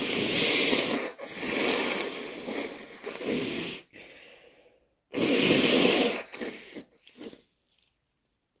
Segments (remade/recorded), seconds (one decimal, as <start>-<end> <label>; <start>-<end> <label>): 0.0-8.6 recorded